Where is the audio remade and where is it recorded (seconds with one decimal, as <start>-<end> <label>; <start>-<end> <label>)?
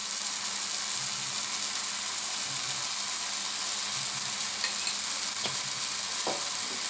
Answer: 0.0-6.9 recorded